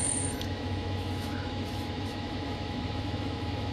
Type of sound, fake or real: fake